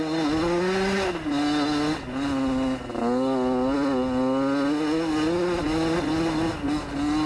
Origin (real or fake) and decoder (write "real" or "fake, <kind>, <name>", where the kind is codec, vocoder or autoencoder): real